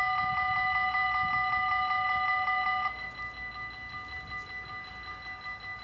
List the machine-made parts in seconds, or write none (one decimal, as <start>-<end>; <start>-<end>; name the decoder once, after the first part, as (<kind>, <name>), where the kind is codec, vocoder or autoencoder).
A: none